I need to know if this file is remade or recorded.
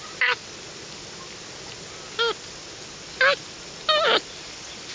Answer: recorded